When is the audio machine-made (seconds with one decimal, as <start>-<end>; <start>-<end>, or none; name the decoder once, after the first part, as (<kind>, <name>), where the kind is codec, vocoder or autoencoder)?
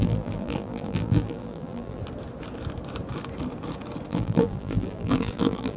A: 0.0-2.0 (vocoder, BigVGAN v2); 4.1-5.8